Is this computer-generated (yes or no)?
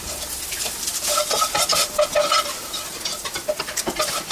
yes